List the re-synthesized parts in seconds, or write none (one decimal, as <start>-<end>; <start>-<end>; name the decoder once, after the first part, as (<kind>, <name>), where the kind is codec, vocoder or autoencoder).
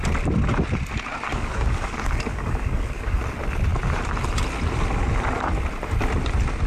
1.3-3.2 (codec, DAC)